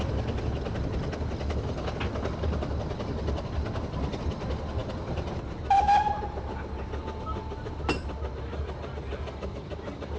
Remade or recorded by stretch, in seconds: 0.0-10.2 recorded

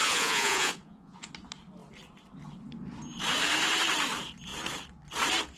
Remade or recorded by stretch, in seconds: 0.0-1.3 remade; 1.3-5.6 recorded

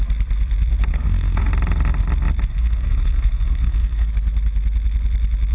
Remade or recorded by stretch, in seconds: 0.0-0.9 recorded; 0.9-1.5 remade; 1.5-2.5 recorded; 2.5-4.1 remade; 4.1-5.5 recorded

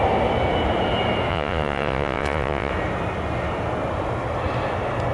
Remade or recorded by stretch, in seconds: 0.0-1.3 recorded; 1.3-2.7 remade; 2.7-5.1 recorded